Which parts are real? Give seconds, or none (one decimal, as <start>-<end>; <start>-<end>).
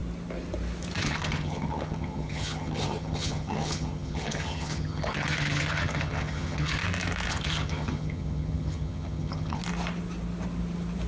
0.0-1.0; 6.8-7.3; 9.6-11.1